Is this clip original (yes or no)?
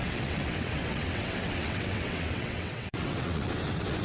no